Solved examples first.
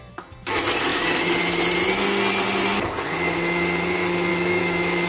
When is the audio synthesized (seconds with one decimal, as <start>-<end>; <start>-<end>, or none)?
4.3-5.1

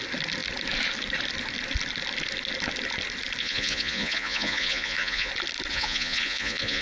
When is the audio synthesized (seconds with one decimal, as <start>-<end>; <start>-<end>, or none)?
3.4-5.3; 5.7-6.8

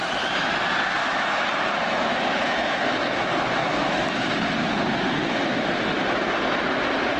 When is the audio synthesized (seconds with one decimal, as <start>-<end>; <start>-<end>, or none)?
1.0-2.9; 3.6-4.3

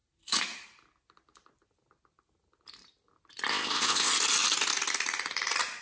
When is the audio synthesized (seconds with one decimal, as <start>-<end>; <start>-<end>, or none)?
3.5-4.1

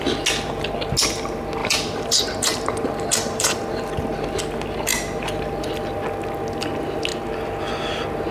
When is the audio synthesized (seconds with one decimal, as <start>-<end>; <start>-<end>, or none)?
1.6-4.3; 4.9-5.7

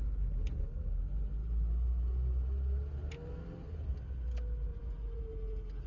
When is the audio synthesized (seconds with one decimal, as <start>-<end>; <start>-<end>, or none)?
4.7-5.2

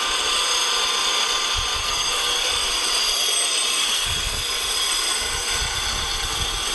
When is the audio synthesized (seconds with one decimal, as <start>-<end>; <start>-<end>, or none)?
1.8-2.5; 3.8-4.4

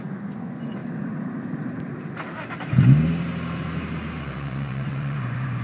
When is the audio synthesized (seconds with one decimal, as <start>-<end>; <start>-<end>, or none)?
0.0-0.8; 4.2-5.6